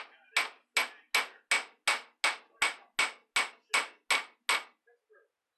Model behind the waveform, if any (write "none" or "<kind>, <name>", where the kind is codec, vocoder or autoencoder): none